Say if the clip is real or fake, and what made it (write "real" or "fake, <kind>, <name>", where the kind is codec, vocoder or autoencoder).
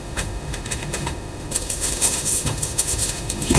fake, autoencoder, DAC-VAE